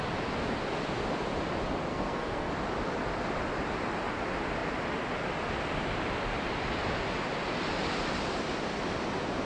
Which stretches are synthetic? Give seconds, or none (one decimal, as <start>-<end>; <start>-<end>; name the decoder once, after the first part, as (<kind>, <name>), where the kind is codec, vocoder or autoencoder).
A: 1.9-2.5 (codec, SNAC)

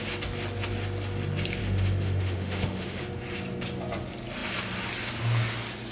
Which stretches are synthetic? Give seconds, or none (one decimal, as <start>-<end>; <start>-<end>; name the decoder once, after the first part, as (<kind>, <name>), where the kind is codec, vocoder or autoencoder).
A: 1.6-3.0 (autoencoder, DAC-VAE)

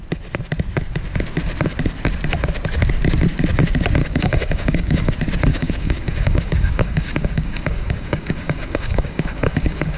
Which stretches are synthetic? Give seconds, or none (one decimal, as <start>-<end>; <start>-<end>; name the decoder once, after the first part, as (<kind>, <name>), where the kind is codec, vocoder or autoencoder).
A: 4.0-5.1 (codec, DAC); 5.5-10.0

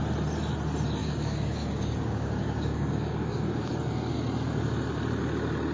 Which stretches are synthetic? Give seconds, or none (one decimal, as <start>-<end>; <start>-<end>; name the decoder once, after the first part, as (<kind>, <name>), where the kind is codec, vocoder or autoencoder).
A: 1.0-3.7 (codec, DAC)

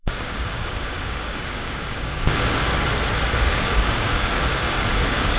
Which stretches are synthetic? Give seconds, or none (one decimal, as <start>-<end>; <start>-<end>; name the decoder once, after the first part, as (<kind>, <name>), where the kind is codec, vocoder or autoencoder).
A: 0.0-2.7 (codec, DAC); 3.3-5.4